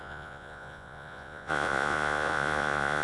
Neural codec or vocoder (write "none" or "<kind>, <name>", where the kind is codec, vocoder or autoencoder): vocoder, Vocos